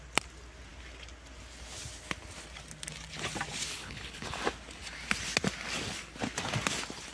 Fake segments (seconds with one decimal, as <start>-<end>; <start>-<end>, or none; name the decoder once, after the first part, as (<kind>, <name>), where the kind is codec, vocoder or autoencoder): 3.8-4.4 (codec, HILCodec)